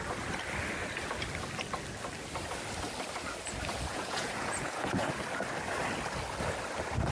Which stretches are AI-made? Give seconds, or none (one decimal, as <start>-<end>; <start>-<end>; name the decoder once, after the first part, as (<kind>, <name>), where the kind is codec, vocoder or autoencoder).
3.9-5.1 (vocoder, Vocos)